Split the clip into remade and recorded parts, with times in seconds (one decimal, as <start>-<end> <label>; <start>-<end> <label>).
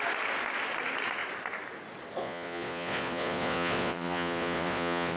0.0-2.2 recorded; 2.2-5.2 remade